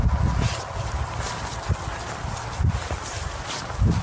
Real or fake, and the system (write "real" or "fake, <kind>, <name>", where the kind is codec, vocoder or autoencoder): real